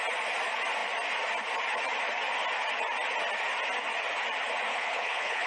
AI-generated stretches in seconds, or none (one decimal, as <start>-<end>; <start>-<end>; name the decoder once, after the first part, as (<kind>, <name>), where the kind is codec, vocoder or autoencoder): 4.7-5.5 (codec, HILCodec)